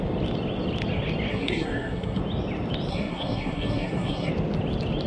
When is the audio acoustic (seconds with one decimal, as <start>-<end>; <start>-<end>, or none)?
0.0-1.3; 2.2-2.9; 4.3-5.1